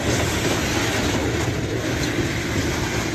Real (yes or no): yes